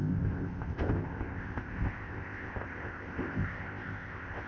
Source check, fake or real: fake